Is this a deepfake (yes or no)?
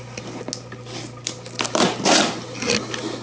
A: no